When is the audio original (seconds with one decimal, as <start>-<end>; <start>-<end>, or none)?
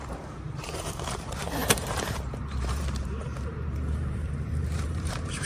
none